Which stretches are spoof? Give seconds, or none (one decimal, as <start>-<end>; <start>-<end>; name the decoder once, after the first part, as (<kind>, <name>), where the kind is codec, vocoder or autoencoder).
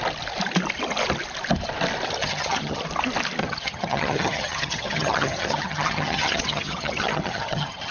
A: 2.2-2.8 (vocoder, HiFi-GAN); 3.4-7.9